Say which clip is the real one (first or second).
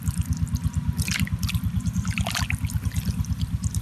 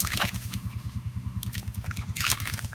first